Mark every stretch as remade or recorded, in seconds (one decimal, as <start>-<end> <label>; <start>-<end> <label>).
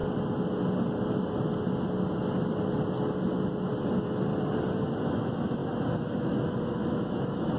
0.0-3.9 recorded; 3.9-4.3 remade; 4.3-5.0 recorded; 5.0-7.6 remade